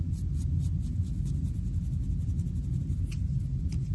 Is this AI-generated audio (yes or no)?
no